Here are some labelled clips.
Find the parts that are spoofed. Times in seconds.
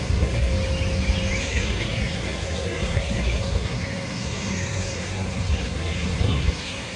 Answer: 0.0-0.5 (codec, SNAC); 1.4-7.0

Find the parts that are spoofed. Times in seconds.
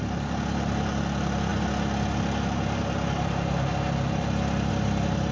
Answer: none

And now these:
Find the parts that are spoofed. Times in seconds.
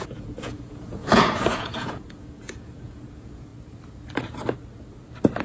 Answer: 0.0-3.5 (vocoder, Vocos)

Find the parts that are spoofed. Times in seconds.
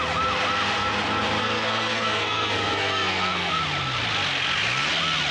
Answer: 1.4-3.6 (codec, SNAC)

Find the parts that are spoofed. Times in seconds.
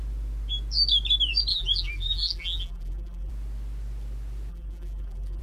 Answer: 1.5-3.3 (vocoder, BigVGAN v2); 4.5-5.4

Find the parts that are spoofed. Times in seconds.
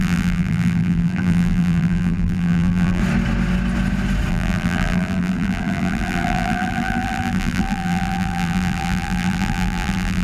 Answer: 0.0-3.0 (vocoder, BigVGAN v2); 4.3-10.2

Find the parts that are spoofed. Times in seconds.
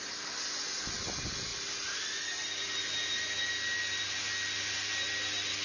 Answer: none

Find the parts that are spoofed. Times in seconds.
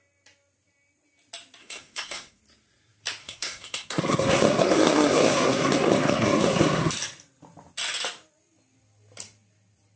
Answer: 1.6-2.4 (codec, SNAC); 3.2-6.9